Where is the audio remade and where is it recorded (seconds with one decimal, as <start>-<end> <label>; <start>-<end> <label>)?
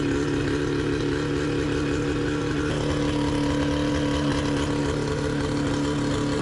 0.0-6.4 recorded